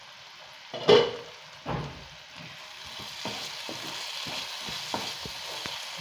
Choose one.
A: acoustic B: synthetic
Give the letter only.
A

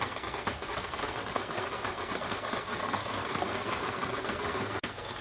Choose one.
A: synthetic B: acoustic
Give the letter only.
A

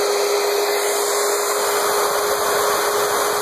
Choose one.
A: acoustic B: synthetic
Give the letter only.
A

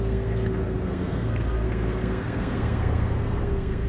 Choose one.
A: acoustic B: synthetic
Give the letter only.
B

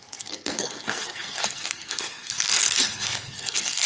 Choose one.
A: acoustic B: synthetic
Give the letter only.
B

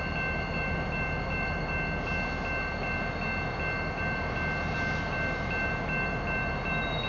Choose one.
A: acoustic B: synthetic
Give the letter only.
A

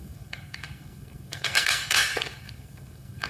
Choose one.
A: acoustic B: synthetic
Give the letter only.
B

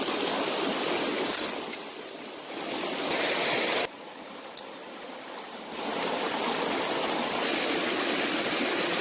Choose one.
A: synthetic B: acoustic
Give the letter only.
B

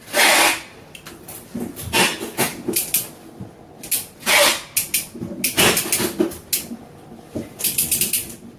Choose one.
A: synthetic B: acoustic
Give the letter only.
B